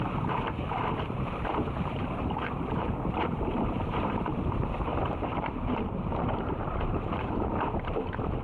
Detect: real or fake fake